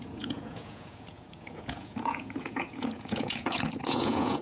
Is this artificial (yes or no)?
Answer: yes